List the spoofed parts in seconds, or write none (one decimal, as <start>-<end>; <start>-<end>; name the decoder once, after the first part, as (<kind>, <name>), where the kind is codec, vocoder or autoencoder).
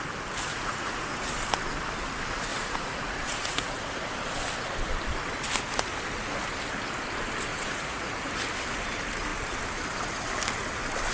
0.5-1.3 (vocoder, Vocos); 2.5-4.1; 7.5-8.3